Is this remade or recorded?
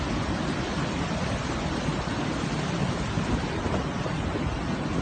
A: recorded